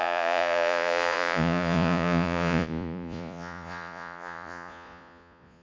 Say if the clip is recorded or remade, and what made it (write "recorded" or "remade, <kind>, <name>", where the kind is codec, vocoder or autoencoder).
remade, vocoder, Vocos